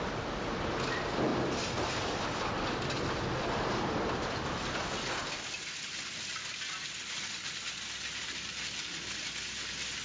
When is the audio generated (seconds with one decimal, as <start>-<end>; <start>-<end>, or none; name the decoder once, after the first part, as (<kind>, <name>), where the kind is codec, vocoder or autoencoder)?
none